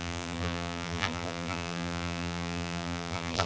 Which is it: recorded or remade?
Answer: remade